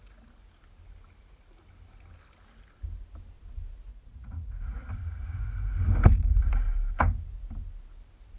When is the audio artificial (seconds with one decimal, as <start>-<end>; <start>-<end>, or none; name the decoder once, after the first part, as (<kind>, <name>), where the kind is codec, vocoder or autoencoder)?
3.9-4.9 (vocoder, Vocos)